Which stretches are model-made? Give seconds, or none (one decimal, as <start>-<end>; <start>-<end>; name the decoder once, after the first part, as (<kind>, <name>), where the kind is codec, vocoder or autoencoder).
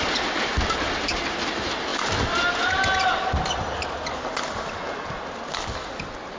none